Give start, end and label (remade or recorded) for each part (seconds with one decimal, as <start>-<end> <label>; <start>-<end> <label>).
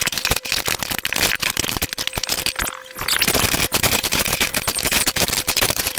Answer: 0.0-0.5 remade; 0.5-4.1 recorded; 4.1-6.0 remade